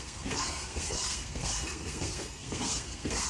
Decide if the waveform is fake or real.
fake